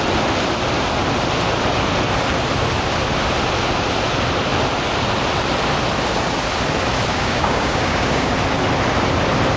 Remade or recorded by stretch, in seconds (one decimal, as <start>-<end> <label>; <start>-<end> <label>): 0.0-7.1 recorded; 7.1-8.3 remade; 8.3-9.6 recorded